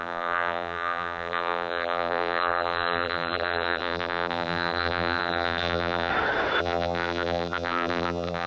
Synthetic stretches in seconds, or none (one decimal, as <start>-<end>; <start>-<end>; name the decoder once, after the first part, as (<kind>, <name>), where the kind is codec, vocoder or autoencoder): 0.0-6.1 (vocoder, BigVGAN v2); 6.6-8.5